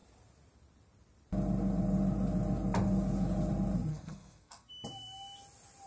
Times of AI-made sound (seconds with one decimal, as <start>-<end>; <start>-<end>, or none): 3.9-4.7